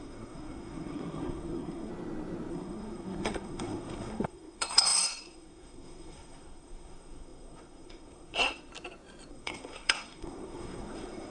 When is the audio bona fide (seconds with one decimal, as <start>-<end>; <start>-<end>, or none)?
1.9-2.5; 8.7-9.3